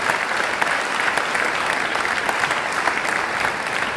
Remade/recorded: recorded